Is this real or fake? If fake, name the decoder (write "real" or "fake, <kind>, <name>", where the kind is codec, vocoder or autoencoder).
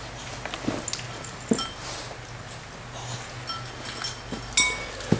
real